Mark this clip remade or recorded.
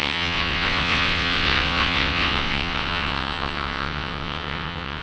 remade